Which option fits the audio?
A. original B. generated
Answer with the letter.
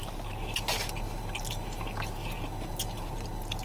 A